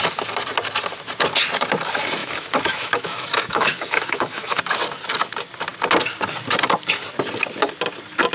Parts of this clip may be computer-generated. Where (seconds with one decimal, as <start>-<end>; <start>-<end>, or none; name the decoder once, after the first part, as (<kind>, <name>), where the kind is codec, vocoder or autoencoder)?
2.2-4.6 (autoencoder, DAC-VAE)